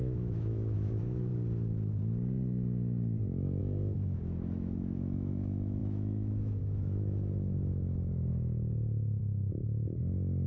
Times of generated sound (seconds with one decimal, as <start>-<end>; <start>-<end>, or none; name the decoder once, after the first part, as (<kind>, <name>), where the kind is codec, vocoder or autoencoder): 0.0-1.3 (autoencoder, DAC-VAE); 3.6-8.3; 9.2-10.5